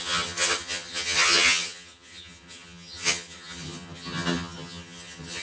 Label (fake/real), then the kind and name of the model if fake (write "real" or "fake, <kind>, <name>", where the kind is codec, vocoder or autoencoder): fake, vocoder, HiFi-GAN